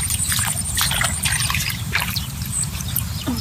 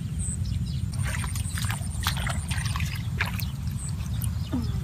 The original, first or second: second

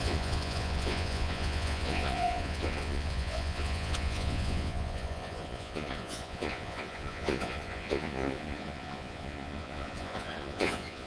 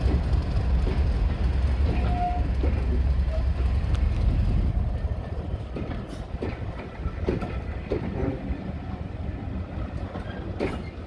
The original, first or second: second